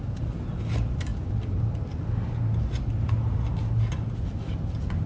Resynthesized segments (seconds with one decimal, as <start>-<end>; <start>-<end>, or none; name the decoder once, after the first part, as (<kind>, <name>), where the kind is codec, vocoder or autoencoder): none